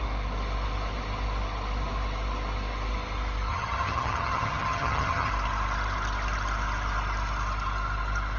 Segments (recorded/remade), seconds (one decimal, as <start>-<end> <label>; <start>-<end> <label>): 0.0-3.5 recorded; 3.5-5.3 remade; 5.3-8.4 recorded